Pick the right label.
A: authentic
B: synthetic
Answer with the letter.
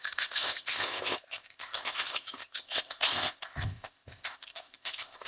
B